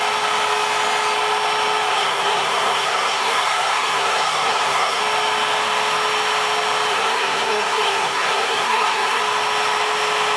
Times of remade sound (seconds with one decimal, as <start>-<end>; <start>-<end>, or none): 1.9-5.0; 6.9-9.2